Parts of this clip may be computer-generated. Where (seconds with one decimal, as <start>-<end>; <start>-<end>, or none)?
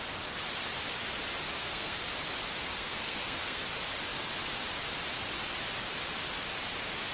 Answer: 1.6-2.1; 2.7-3.6